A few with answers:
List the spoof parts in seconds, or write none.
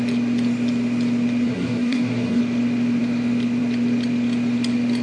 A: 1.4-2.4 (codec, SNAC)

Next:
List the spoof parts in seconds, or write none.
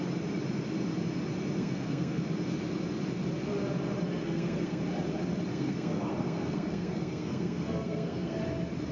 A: 1.6-2.2 (codec, SNAC); 4.2-4.8; 5.5-8.4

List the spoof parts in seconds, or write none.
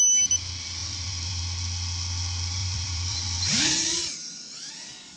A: 0.8-1.4 (vocoder, BigVGAN v2); 2.6-4.7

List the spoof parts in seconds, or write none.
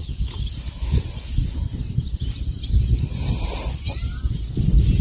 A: none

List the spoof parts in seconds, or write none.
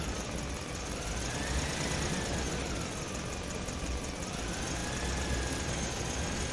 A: none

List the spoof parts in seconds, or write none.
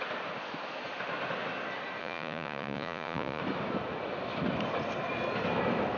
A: 2.0-3.4 (vocoder, Vocos)